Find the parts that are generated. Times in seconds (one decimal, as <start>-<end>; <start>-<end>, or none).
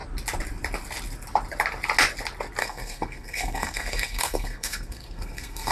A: 2.6-5.7